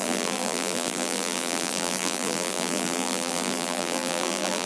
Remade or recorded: remade